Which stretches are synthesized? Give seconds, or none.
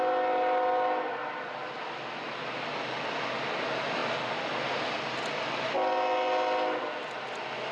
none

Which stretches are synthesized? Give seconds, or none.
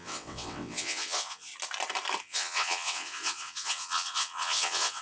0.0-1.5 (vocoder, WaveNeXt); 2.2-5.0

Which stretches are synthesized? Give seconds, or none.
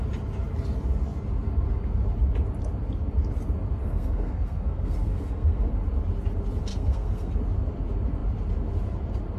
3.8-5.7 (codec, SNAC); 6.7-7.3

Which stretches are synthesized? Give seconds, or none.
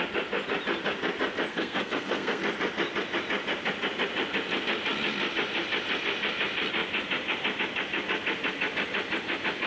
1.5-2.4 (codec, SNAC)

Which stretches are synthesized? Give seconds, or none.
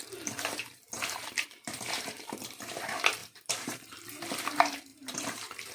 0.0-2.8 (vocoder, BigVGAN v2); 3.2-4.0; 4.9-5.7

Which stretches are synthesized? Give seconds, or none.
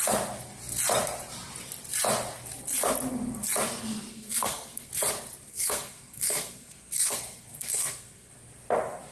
4.1-4.9 (codec, SNAC); 5.5-8.3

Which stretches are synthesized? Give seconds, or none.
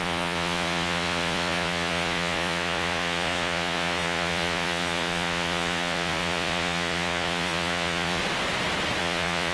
0.0-8.2 (vocoder, Vocos); 9.0-9.5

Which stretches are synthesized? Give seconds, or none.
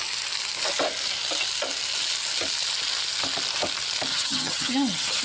4.1-5.2 (vocoder, HiFi-GAN)